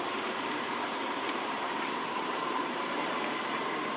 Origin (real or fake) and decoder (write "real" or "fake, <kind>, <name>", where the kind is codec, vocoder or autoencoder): fake, vocoder, BigVGAN v2